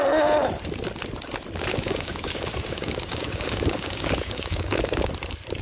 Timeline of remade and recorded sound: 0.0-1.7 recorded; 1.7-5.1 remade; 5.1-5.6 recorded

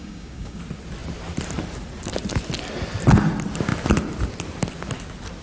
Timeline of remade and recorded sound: 0.0-0.6 remade; 0.6-5.4 recorded

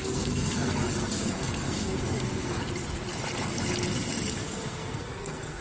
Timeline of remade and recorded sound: 0.0-2.6 remade; 2.6-4.4 recorded; 4.4-5.6 remade

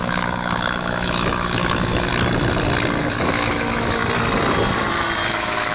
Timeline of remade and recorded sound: 0.0-2.1 remade; 2.1-3.0 recorded; 3.0-4.0 remade; 4.0-5.3 recorded; 5.3-5.7 remade

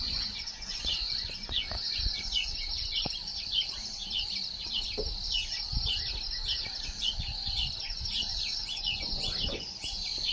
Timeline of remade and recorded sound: 0.0-4.0 remade; 4.0-7.0 recorded; 7.0-10.3 remade

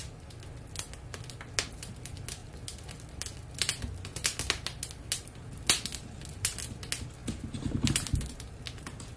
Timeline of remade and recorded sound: 0.0-9.2 recorded